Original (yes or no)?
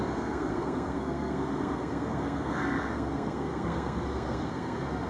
no